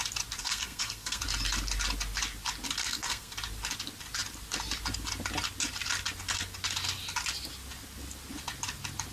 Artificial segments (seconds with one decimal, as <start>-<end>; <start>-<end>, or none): 0.4-1.2; 2.8-3.3